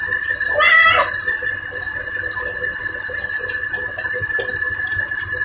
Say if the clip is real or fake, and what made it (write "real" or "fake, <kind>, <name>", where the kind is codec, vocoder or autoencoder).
real